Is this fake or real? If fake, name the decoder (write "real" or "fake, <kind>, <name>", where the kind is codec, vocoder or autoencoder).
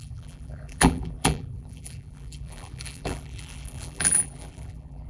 fake, vocoder, BigVGAN v2